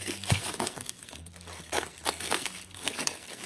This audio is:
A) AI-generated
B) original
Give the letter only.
A